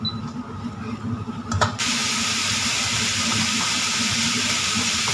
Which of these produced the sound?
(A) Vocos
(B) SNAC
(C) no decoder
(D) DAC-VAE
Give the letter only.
C